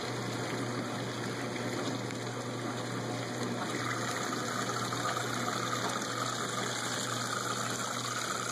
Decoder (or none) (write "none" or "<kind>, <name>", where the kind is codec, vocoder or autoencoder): none